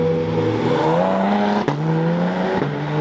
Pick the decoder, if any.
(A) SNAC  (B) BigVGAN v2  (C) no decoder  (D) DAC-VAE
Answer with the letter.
C